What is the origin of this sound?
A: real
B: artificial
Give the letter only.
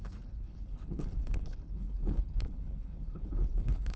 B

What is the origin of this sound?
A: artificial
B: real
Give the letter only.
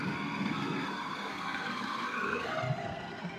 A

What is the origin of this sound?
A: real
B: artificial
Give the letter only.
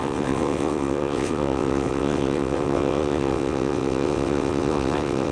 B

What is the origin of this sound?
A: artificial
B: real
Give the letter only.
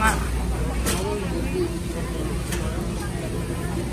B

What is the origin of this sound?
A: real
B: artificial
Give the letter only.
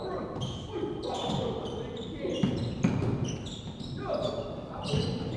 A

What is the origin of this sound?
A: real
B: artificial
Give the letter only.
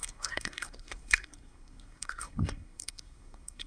B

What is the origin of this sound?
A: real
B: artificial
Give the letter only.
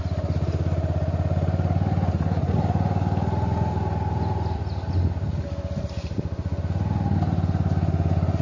A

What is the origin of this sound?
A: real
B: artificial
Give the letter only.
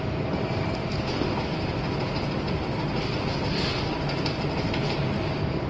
A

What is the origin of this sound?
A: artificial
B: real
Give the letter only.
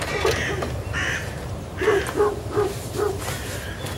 A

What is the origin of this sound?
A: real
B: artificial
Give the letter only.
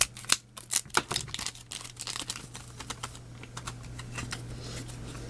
A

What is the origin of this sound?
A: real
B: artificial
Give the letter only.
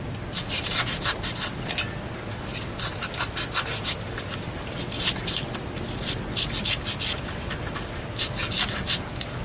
A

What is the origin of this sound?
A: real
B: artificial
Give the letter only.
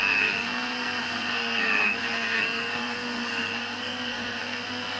B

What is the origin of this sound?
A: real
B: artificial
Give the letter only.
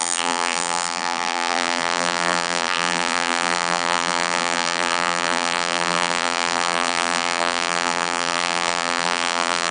B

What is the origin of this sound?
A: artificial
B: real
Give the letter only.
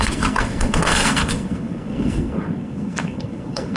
A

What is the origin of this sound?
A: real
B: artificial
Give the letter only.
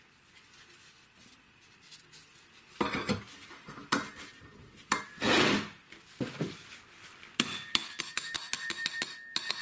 A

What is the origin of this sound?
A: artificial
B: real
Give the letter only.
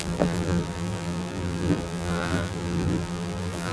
A